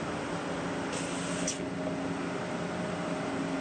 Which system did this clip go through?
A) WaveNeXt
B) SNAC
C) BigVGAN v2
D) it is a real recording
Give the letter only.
D